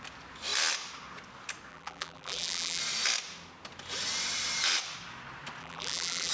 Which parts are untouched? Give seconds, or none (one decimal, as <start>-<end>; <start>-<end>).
0.0-1.7; 2.8-5.6